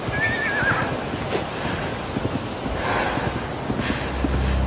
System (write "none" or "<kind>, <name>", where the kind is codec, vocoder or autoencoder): none